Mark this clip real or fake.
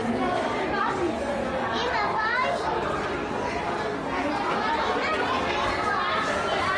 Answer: real